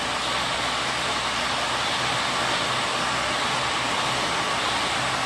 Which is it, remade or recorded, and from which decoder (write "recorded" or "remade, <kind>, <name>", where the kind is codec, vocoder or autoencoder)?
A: recorded